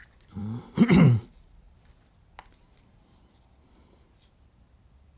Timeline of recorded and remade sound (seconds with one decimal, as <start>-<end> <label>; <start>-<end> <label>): 0.0-5.2 recorded